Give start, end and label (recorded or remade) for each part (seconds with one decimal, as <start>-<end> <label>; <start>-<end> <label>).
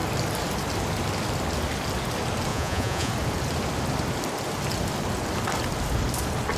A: 0.0-2.5 recorded; 2.5-3.1 remade; 3.1-6.6 recorded